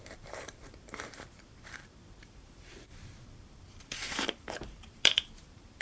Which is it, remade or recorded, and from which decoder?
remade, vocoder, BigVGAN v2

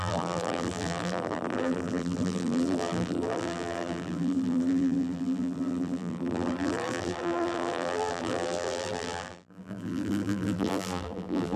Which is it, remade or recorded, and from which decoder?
remade, vocoder, BigVGAN v2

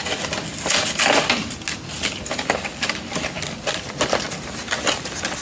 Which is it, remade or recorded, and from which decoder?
recorded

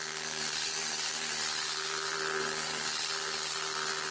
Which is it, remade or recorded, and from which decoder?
remade, vocoder, BigVGAN v2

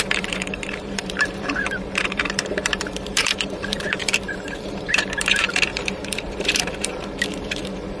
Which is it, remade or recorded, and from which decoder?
remade, vocoder, BigVGAN v2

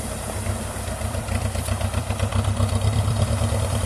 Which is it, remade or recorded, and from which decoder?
remade, vocoder, BigVGAN v2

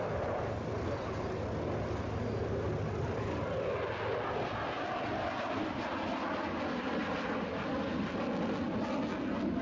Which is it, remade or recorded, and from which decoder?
recorded